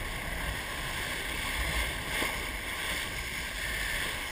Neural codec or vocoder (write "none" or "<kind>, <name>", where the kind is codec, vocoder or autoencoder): none